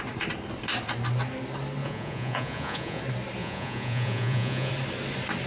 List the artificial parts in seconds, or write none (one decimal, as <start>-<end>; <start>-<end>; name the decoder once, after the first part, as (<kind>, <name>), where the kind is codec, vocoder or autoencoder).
1.8-3.0 (vocoder, Vocos); 3.4-4.7